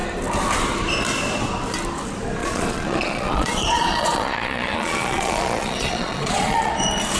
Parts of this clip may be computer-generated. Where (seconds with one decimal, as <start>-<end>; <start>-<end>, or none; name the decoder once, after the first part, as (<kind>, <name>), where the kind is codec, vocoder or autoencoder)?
2.4-6.7 (vocoder, Vocos)